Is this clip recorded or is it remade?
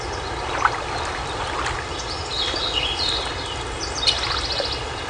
recorded